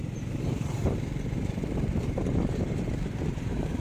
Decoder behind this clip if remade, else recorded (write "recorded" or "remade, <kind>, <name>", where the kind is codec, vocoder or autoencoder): remade, vocoder, BigVGAN v2